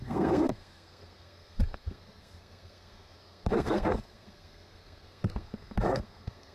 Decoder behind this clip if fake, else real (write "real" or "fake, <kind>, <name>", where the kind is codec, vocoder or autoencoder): fake, codec, SNAC